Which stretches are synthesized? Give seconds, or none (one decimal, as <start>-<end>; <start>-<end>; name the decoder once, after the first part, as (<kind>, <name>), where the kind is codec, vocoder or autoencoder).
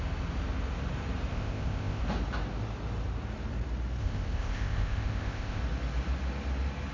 1.3-2.0 (codec, ZipCodec); 4.0-5.6